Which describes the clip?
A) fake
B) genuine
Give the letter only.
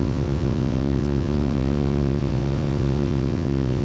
A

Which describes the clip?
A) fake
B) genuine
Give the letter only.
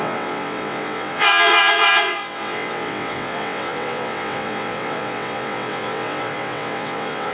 A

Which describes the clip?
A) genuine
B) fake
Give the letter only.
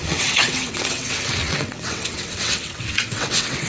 B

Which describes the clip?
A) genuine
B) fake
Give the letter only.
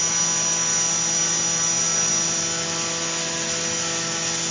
A